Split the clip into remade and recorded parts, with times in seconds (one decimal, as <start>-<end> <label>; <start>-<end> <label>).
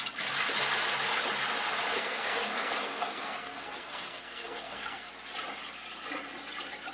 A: 0.0-1.9 recorded; 1.9-5.1 remade; 5.1-6.9 recorded